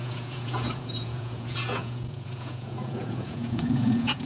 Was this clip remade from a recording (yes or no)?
yes